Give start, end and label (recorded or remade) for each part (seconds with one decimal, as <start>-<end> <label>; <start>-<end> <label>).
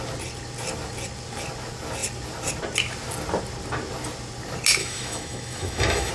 0.0-4.8 recorded; 4.8-6.1 remade